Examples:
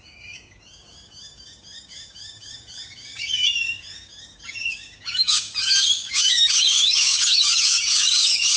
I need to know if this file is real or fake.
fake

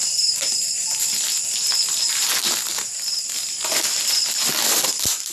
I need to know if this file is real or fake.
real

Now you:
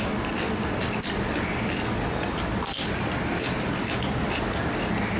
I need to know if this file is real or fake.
real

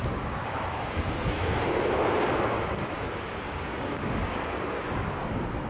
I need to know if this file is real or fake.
fake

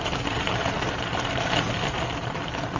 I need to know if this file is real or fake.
real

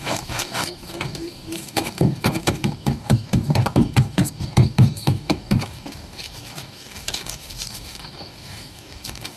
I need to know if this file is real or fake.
fake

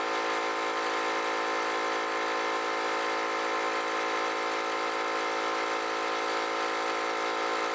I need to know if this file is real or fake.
real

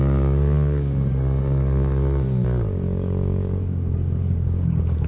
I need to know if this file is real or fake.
fake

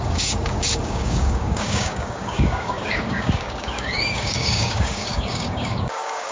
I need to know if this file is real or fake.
fake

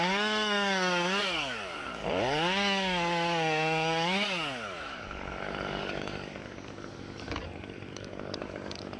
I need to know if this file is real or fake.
fake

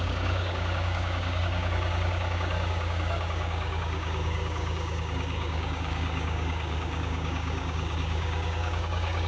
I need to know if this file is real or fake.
fake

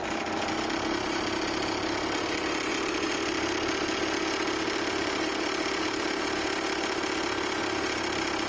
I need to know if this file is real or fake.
real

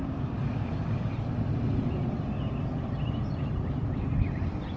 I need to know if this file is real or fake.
real